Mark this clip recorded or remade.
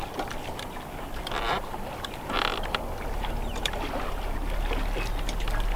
recorded